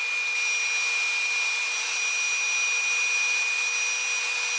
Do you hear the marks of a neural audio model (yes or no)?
no